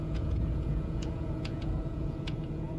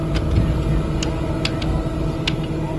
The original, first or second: second